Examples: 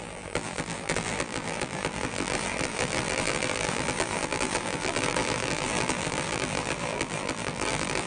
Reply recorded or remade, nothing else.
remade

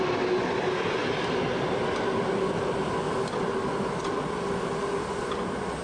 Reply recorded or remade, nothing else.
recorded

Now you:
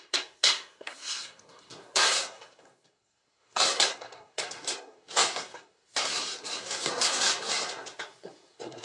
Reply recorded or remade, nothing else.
remade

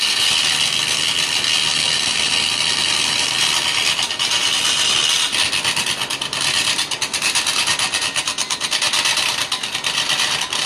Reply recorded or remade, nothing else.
recorded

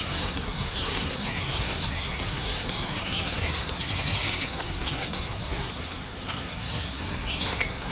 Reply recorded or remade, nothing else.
remade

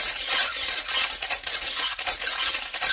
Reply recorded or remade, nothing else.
remade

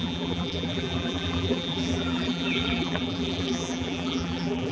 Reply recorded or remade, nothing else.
remade